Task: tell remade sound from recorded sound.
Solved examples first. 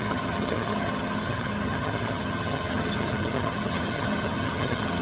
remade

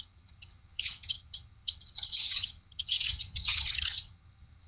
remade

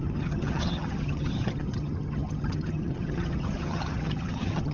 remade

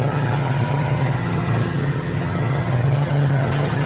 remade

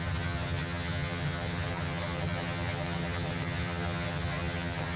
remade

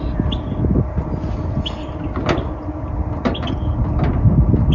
recorded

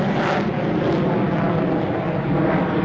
recorded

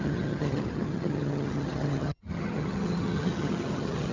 remade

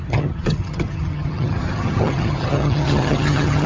remade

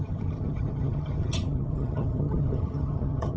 remade